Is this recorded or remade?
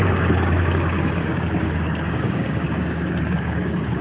remade